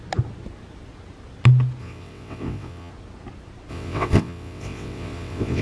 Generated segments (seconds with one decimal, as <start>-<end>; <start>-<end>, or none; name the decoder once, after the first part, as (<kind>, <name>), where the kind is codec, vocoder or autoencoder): 1.8-2.9 (vocoder, WaveNeXt); 3.7-5.6